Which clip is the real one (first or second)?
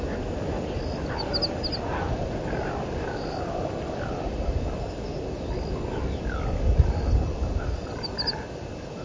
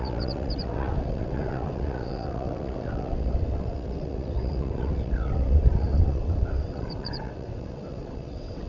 first